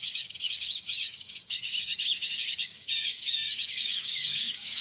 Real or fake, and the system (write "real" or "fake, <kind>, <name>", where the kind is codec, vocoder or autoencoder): fake, codec, DAC